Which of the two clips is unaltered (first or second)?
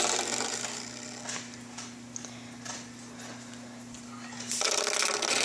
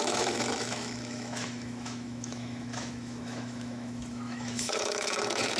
first